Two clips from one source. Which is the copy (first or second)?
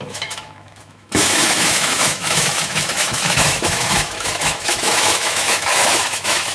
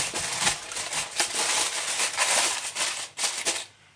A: first